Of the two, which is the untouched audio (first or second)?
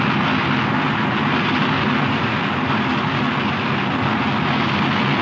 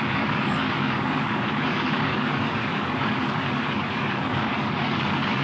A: first